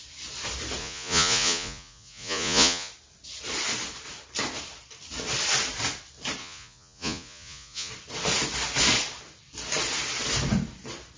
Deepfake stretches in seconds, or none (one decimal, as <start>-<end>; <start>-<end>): 0.8-2.9; 6.4-7.9